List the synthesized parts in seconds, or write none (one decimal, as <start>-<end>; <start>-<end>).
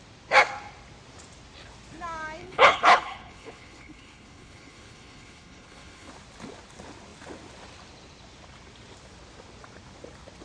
2.4-6.1